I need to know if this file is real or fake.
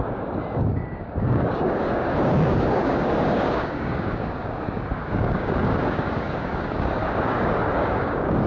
fake